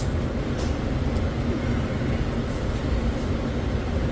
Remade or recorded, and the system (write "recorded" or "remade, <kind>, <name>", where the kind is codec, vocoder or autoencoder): recorded